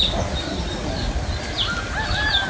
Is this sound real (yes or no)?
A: yes